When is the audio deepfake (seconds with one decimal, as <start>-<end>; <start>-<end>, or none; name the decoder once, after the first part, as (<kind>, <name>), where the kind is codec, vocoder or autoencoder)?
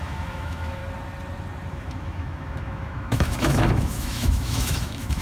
0.0-0.8 (autoencoder, DAC-VAE); 1.7-5.2